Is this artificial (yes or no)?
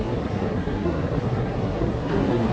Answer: yes